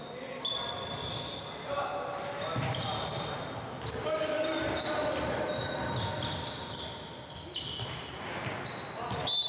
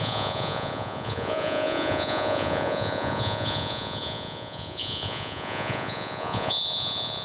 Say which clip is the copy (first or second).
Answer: second